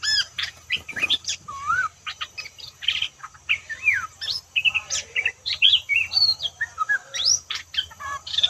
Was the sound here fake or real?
fake